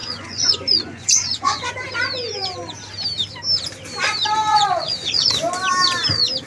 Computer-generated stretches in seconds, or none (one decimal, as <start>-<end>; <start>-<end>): 0.0-1.7; 4.5-5.3